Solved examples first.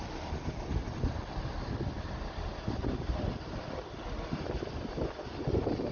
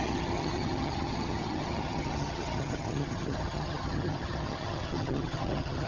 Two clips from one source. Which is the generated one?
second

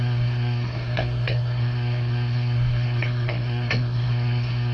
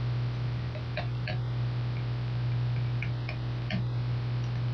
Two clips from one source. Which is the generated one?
first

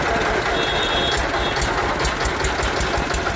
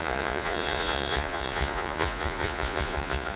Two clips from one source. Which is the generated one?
second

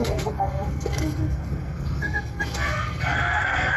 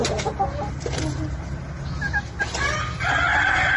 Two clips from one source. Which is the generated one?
first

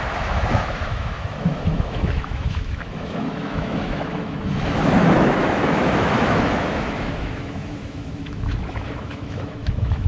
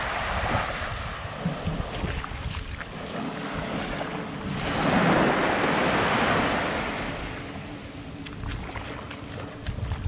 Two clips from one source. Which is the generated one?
first